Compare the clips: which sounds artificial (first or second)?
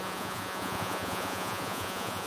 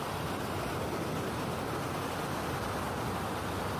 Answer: first